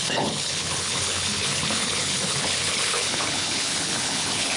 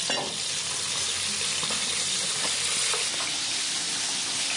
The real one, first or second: second